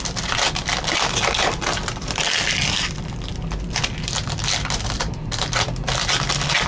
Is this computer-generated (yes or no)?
no